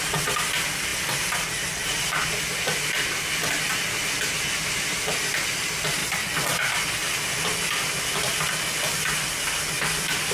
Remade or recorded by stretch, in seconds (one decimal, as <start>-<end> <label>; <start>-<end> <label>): 0.0-10.3 recorded